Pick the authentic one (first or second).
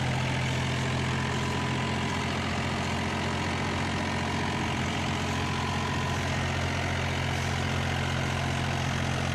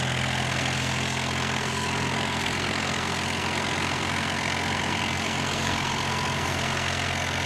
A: first